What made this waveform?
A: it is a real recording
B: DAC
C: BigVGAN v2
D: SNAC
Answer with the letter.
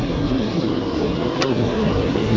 D